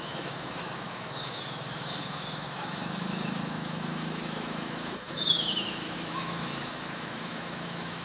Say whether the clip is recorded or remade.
remade